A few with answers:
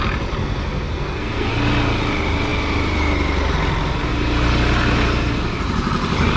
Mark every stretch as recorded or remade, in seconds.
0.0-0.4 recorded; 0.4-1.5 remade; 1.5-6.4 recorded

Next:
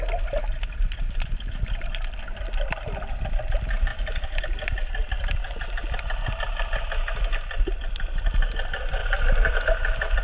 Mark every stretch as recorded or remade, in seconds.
0.0-9.0 recorded; 9.0-9.5 remade; 9.5-10.2 recorded

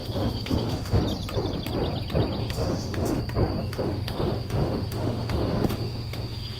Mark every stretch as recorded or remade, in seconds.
0.0-1.0 remade; 1.0-2.4 recorded; 2.4-3.2 remade; 3.2-3.6 recorded; 3.6-6.6 remade

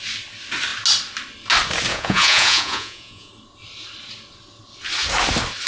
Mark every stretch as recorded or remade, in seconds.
0.0-1.9 recorded; 1.9-3.3 remade; 3.3-5.7 recorded

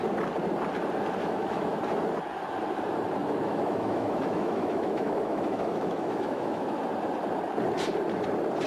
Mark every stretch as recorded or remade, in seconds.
0.0-1.2 recorded; 1.2-1.8 remade; 1.8-3.2 recorded; 3.2-6.8 remade; 6.8-8.7 recorded